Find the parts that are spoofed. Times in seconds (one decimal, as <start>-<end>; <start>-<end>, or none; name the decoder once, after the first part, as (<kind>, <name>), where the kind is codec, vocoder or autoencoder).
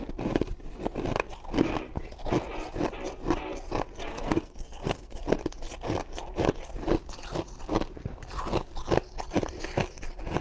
4.1-5.2 (codec, SNAC)